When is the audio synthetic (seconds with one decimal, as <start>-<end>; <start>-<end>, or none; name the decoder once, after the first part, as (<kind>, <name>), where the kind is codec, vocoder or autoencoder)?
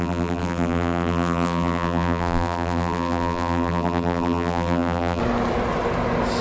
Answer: 0.0-5.2 (vocoder, BigVGAN v2)